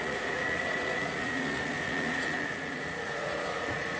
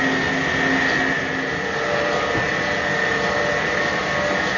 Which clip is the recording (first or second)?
second